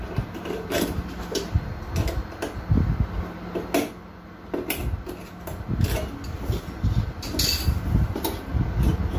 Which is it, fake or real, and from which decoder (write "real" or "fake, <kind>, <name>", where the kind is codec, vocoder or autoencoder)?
real